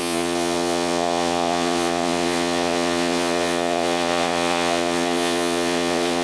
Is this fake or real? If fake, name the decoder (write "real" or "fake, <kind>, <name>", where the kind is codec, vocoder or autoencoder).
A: fake, vocoder, Vocos